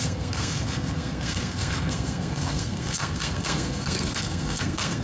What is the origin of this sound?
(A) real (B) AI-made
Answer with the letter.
B